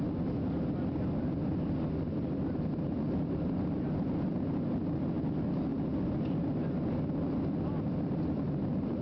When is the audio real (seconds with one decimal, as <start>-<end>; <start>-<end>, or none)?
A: 0.0-9.0